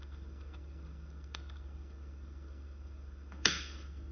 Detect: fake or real fake